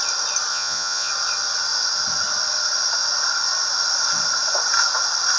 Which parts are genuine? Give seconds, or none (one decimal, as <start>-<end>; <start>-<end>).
0.0-0.5; 1.1-5.4